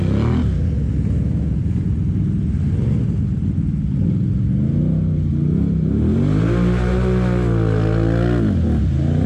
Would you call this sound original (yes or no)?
yes